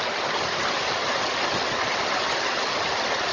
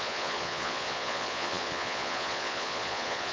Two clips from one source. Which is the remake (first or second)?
second